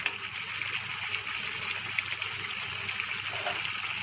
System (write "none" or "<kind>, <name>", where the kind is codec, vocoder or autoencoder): none